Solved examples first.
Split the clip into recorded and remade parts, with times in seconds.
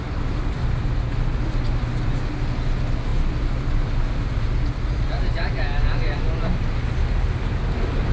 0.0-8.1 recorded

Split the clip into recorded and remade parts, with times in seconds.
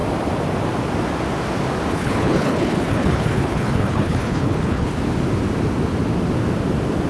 0.0-1.9 recorded; 1.9-5.0 remade; 5.0-7.1 recorded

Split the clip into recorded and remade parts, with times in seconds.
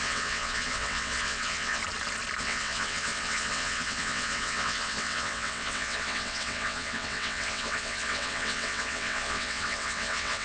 0.0-1.8 remade; 1.8-2.4 recorded; 2.4-10.4 remade